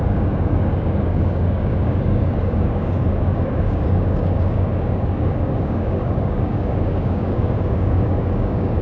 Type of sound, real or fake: fake